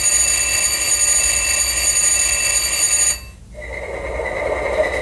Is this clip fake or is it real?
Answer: real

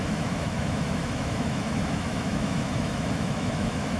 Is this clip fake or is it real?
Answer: fake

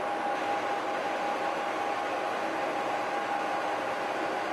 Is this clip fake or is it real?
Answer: real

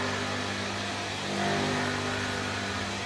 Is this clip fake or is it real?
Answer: real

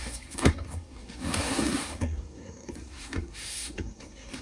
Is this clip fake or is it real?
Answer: fake